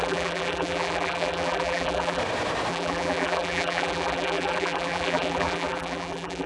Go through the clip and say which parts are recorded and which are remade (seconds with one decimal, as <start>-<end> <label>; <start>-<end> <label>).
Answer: 0.0-2.2 remade; 2.2-2.7 recorded; 2.7-6.5 remade